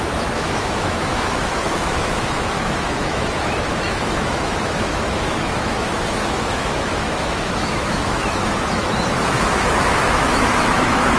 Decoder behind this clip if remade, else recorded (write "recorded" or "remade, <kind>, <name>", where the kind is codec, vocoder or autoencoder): remade, autoencoder, DAC-VAE